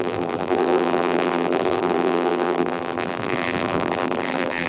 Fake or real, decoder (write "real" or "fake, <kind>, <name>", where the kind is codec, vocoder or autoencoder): fake, vocoder, BigVGAN v2